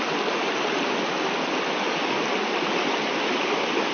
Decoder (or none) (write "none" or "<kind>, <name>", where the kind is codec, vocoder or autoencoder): none